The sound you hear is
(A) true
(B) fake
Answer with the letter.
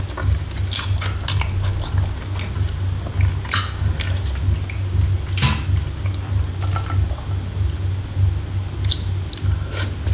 A